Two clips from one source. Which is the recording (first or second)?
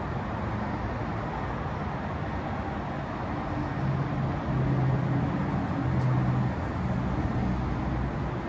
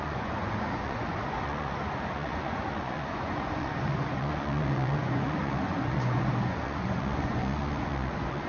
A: first